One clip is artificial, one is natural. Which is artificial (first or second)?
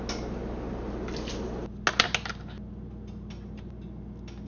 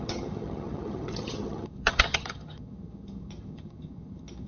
second